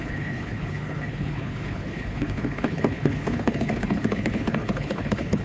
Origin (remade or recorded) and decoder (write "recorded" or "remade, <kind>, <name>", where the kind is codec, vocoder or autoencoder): remade, codec, HILCodec